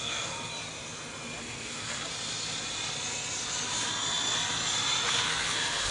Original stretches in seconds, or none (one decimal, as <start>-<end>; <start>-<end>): 0.5-1.4; 2.1-5.1